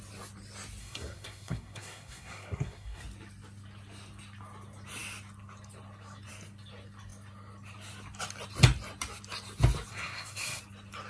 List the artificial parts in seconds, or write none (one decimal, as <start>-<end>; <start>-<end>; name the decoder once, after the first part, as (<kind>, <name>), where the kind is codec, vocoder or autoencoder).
0.8-3.0 (codec, SNAC); 9.9-10.6